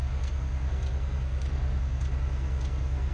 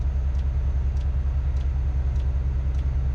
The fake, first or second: first